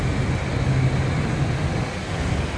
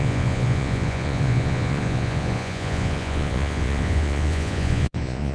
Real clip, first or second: first